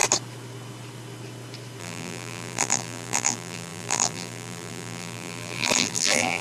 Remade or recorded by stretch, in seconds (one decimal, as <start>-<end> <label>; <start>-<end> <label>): 0.0-1.8 recorded; 1.8-6.4 remade